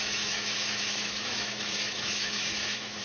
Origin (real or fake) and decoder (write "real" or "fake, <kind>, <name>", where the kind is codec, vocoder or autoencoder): fake, autoencoder, DAC-VAE